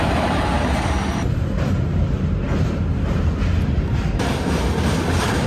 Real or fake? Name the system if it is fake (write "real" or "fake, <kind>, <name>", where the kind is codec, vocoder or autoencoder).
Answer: fake, vocoder, BigVGAN v2